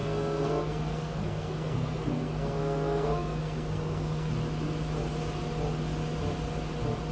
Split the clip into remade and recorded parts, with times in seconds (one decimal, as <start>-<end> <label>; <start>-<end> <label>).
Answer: 0.0-4.3 remade; 4.3-7.1 recorded